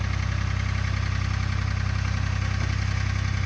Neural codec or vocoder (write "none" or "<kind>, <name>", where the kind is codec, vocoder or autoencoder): none